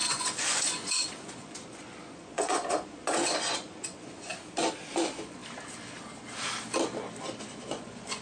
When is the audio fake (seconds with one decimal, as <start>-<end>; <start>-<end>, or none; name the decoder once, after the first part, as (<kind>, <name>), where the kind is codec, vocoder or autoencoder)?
0.0-4.3 (vocoder, Vocos); 4.9-5.4; 7.4-8.2